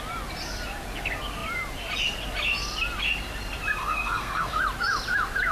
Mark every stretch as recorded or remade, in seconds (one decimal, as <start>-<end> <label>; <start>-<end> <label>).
0.0-3.8 recorded; 3.8-4.5 remade; 4.5-5.5 recorded